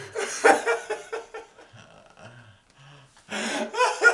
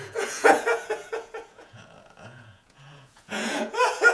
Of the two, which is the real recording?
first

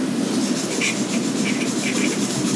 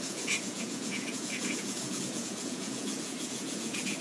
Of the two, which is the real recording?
first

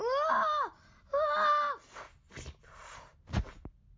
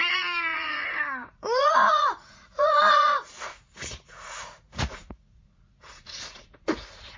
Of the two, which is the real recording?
first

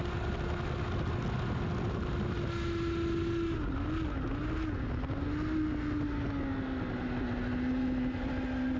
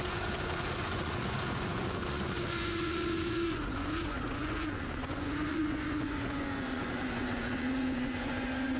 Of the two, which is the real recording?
first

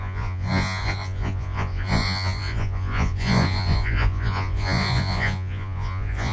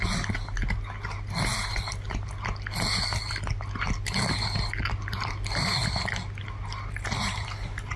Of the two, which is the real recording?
second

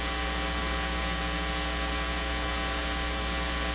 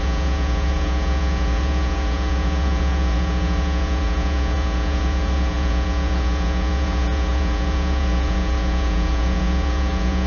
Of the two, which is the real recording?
first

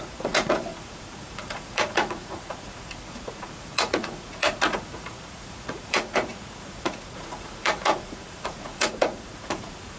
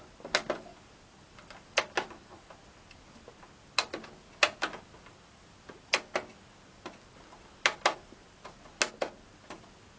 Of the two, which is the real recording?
second